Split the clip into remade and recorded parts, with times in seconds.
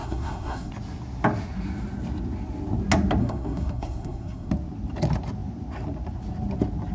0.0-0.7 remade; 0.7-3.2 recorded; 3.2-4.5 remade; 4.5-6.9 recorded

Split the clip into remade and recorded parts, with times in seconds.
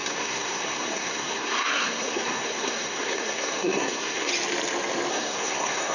0.0-4.3 remade; 4.3-5.1 recorded; 5.1-5.9 remade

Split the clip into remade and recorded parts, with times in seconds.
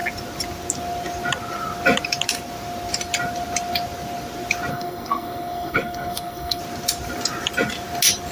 0.0-4.7 recorded; 4.7-6.6 remade; 6.6-8.3 recorded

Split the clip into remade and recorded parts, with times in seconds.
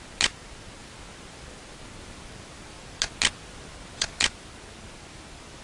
0.0-5.6 recorded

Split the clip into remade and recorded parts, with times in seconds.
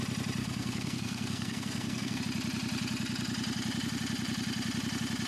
0.0-0.4 recorded; 0.4-2.2 remade; 2.2-5.3 recorded